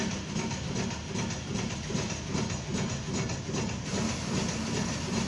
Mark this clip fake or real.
real